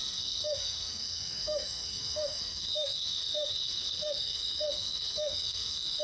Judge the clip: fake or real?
fake